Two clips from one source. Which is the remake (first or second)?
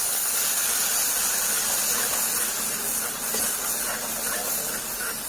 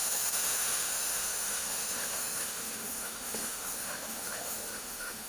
second